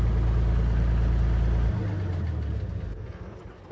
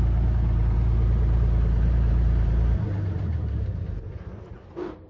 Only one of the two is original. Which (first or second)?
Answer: first